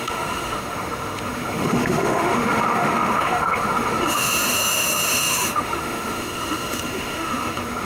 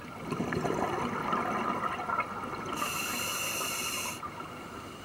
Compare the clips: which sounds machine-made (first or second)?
first